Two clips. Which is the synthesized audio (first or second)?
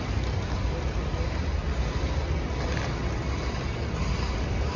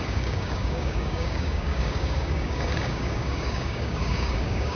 second